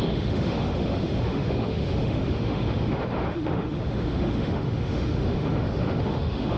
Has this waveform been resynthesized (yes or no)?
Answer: yes